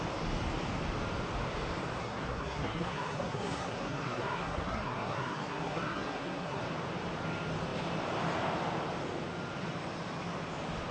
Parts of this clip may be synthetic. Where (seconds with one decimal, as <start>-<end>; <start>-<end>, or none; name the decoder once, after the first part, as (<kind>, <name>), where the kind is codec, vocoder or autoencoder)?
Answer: 2.0-6.6 (codec, SNAC)